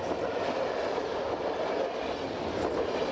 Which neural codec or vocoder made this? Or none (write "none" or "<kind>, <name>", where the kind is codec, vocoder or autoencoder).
none